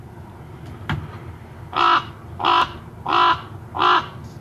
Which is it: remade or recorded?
recorded